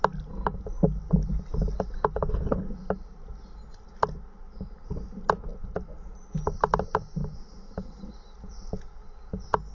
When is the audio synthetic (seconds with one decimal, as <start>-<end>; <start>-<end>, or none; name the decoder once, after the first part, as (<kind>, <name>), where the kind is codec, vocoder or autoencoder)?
5.5-6.3 (vocoder, BigVGAN v2)